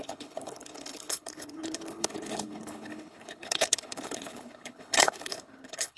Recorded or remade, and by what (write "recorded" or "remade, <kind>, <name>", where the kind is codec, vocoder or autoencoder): remade, codec, HILCodec